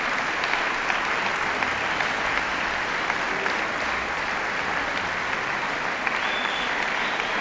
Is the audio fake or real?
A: real